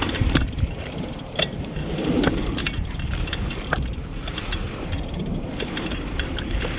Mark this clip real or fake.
fake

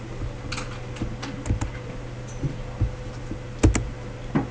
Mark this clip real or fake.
real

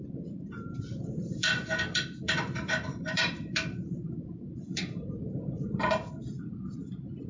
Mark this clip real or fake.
fake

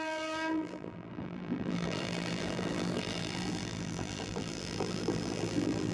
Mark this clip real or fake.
fake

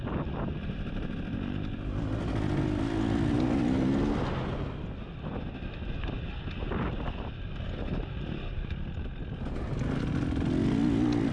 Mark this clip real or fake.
real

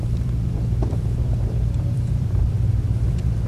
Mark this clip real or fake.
fake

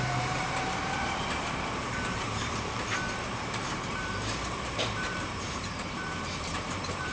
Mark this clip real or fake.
fake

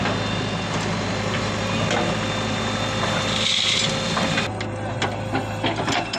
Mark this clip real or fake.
real